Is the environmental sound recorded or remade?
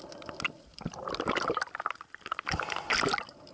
recorded